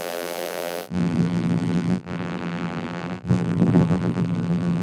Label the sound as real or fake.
fake